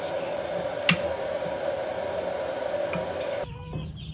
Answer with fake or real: real